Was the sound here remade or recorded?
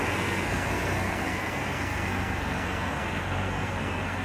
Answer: remade